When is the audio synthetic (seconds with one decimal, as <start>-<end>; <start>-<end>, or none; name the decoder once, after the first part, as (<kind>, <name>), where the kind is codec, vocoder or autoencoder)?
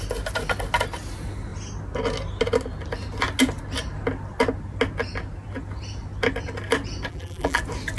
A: 7.1-7.6 (vocoder, BigVGAN v2)